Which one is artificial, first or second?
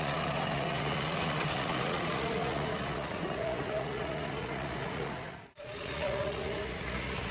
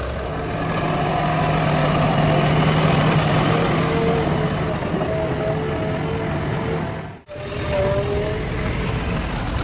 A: first